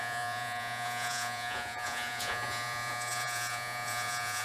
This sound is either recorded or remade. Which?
remade